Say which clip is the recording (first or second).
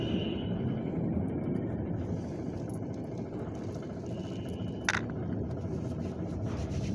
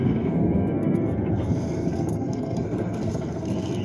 first